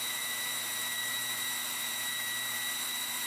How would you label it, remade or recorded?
remade